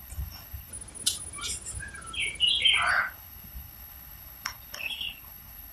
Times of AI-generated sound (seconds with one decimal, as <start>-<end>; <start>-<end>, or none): 0.0-0.7; 2.9-5.7